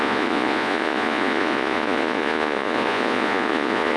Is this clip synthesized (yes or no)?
yes